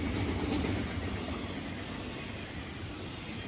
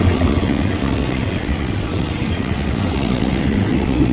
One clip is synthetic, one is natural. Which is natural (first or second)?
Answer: first